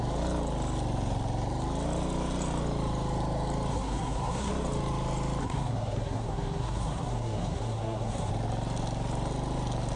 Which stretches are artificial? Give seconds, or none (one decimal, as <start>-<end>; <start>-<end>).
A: 3.7-4.5; 5.4-8.3